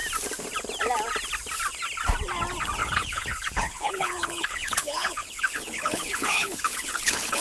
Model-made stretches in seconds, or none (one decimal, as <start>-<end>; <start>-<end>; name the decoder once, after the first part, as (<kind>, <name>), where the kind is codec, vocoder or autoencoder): 2.8-7.4 (codec, HILCodec)